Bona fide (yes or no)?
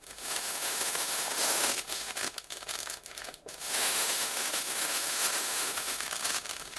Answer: no